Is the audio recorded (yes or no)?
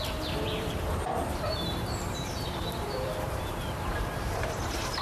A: no